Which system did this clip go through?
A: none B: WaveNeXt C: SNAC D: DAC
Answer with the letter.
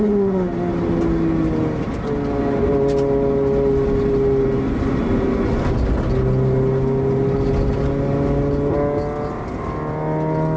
A